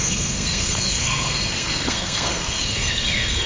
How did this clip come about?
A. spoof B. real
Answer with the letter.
A